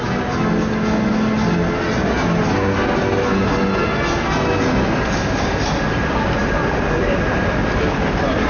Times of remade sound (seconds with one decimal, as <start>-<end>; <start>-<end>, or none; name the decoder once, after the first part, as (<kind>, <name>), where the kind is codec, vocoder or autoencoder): none